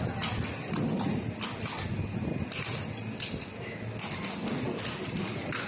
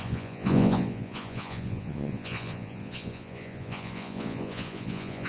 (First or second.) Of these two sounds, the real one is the first